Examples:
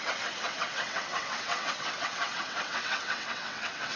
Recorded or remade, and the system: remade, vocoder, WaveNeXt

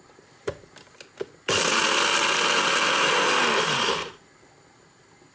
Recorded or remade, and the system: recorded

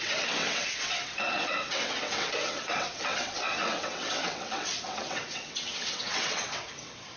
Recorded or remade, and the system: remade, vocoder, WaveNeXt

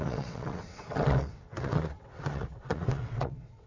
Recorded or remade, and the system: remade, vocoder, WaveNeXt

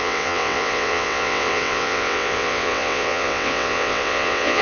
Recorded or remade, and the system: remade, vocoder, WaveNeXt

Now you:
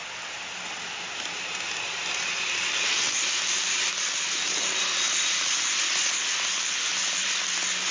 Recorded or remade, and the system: recorded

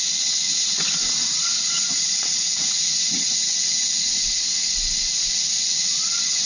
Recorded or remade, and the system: remade, vocoder, WaveNeXt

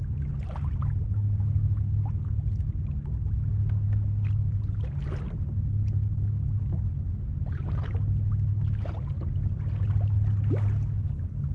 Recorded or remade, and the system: recorded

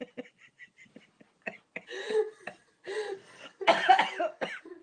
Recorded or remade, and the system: recorded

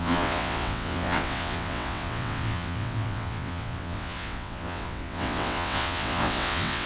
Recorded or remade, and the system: remade, vocoder, WaveNeXt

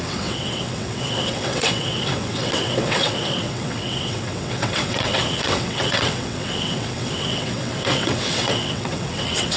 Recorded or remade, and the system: remade, vocoder, WaveNeXt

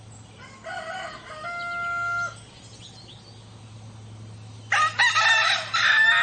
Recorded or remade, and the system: recorded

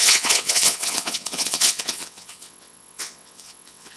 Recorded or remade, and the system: remade, vocoder, WaveNeXt